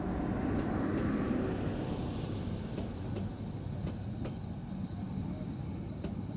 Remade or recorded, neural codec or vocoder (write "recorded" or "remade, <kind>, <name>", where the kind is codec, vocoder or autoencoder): recorded